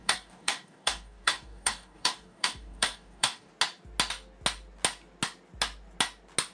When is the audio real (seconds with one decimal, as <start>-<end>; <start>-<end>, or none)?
3.5-6.5